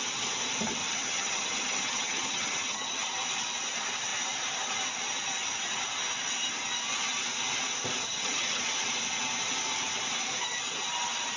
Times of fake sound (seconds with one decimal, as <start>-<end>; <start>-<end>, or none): 0.8-3.1; 8.0-8.6